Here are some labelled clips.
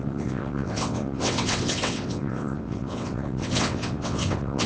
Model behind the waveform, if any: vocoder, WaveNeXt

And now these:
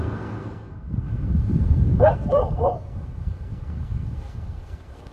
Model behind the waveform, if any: codec, SNAC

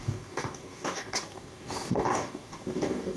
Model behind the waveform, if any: codec, DAC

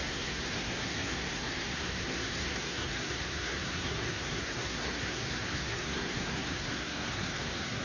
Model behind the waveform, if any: codec, SNAC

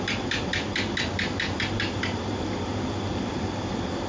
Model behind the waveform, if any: none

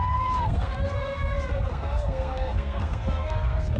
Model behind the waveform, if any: codec, SNAC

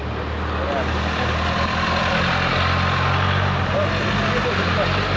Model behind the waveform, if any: none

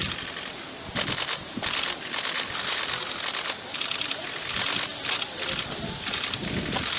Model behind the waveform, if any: none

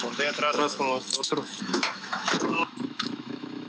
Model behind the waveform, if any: autoencoder, DAC-VAE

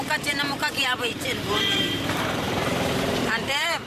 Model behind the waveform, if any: vocoder, BigVGAN v2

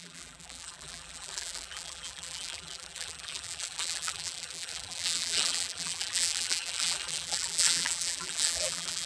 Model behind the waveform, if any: vocoder, BigVGAN v2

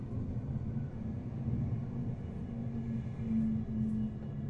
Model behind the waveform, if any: none